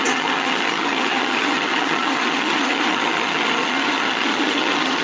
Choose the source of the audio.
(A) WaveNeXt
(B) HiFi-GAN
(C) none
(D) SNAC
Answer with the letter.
B